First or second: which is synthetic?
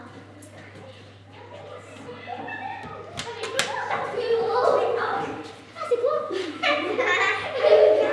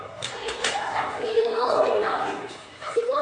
second